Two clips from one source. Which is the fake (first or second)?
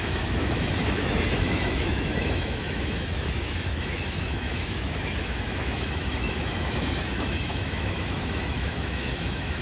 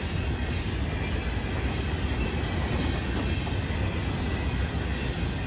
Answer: first